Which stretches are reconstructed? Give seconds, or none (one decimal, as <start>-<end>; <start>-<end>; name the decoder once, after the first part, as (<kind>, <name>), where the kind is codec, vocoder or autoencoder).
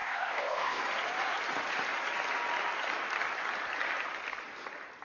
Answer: 0.0-0.8 (codec, ZipCodec)